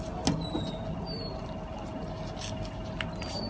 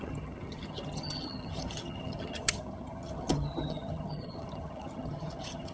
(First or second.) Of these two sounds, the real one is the first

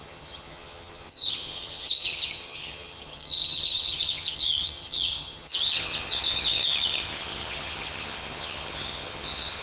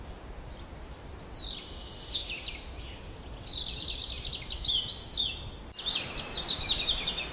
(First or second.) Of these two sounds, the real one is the second